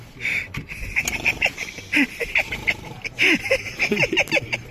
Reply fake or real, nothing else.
real